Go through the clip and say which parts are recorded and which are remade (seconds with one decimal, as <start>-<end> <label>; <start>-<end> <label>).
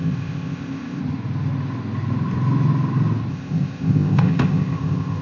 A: 0.0-1.0 remade; 1.0-3.3 recorded; 3.3-5.2 remade